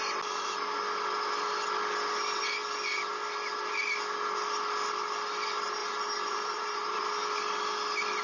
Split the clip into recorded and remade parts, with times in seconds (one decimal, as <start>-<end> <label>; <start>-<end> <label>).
0.0-5.8 recorded; 5.8-7.0 remade; 7.0-8.2 recorded